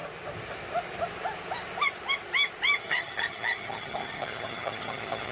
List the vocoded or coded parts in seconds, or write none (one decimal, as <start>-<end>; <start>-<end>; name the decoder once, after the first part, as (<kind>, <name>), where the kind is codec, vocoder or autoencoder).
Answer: 2.8-5.3 (vocoder, HiFi-GAN)